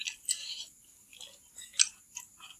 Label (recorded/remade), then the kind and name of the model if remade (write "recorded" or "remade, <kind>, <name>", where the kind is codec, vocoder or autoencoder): recorded